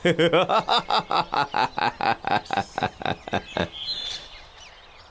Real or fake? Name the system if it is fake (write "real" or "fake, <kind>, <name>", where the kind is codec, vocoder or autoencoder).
real